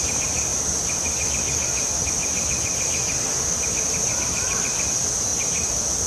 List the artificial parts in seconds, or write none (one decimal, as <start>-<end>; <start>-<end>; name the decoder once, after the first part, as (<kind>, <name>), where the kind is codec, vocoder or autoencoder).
none